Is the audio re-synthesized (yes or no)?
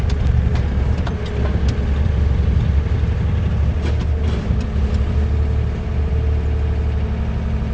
no